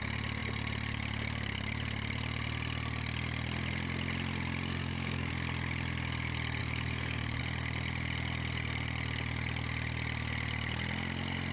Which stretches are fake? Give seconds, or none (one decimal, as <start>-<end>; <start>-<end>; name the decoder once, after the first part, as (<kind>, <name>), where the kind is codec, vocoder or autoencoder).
4.8-5.3 (codec, DAC); 6.6-7.4